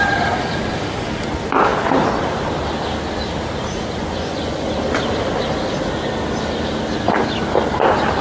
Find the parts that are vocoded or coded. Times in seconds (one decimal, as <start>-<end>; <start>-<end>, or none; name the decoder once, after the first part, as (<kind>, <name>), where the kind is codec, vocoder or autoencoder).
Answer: 4.0-4.7 (vocoder, Vocos)